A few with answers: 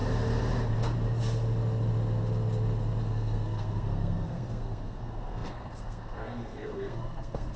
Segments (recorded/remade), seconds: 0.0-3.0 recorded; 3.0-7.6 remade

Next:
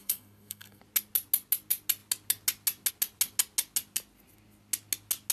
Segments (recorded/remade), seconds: 0.0-0.8 remade; 0.8-5.3 recorded

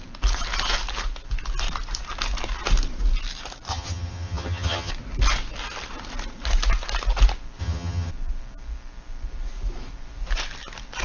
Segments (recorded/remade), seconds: 0.0-3.7 recorded; 3.7-4.9 remade; 4.9-7.6 recorded; 7.6-8.1 remade; 8.1-11.0 recorded

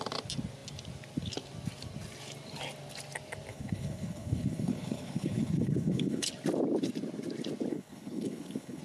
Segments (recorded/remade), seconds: 0.0-3.5 recorded; 3.5-6.3 remade; 6.3-7.7 recorded; 7.7-8.8 remade

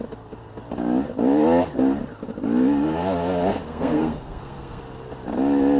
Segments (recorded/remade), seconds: 0.0-3.5 recorded; 3.5-4.8 remade; 4.8-5.8 recorded